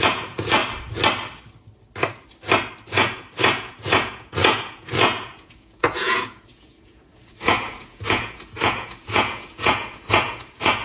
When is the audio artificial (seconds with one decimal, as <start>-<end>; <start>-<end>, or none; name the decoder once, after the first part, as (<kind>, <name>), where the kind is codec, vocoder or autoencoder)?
0.0-0.6 (vocoder, Vocos); 2.9-10.8